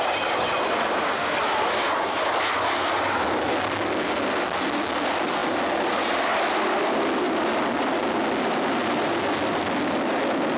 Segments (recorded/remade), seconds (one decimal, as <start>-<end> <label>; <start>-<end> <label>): 0.0-10.6 recorded